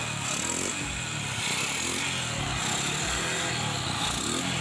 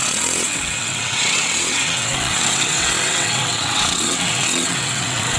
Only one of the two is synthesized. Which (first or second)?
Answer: second